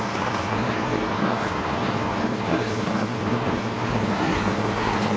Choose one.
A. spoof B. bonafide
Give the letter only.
A